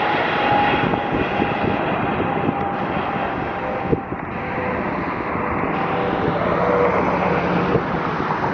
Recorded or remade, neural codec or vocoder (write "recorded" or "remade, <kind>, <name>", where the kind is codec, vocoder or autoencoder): recorded